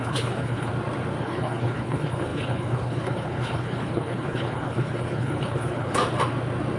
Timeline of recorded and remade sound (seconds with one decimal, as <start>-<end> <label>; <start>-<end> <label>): 0.0-0.7 remade; 0.7-1.2 recorded; 1.2-6.0 remade; 6.0-6.8 recorded